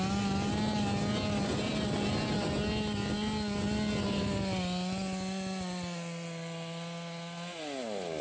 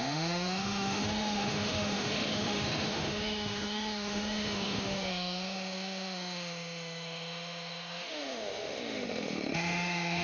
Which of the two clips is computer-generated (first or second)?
second